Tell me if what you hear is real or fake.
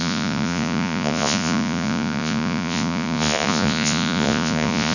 fake